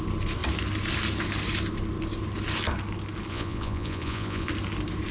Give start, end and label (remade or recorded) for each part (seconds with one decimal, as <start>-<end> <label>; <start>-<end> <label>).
0.0-3.3 recorded; 3.3-4.5 remade; 4.5-5.1 recorded